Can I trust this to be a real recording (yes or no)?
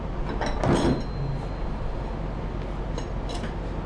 yes